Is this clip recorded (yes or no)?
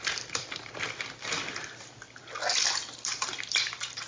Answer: no